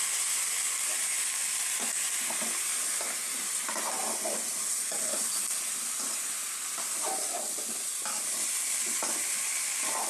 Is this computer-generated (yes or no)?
no